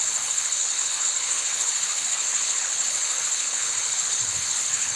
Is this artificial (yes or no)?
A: yes